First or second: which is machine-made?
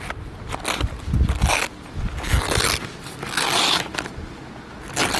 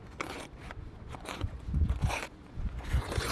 second